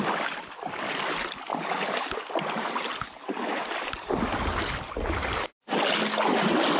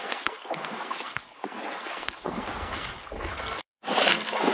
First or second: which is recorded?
first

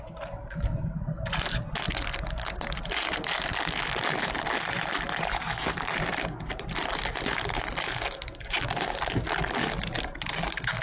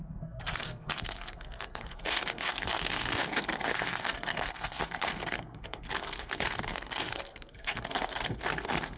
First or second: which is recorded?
first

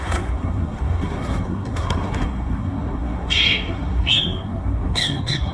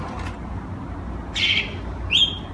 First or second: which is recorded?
second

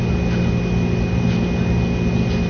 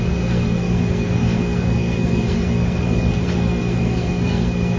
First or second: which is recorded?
first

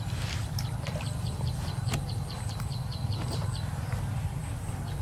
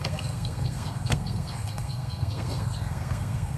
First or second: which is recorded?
first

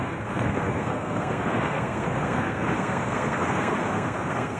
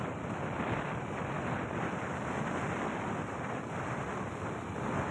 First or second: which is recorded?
second